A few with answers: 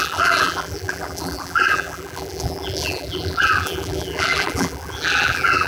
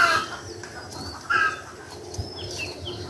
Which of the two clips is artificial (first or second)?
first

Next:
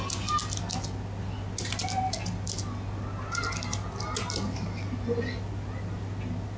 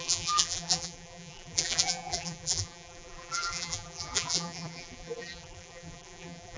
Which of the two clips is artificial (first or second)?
second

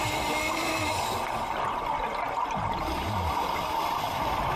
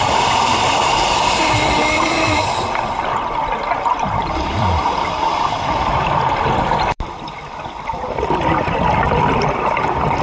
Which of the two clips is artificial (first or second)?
second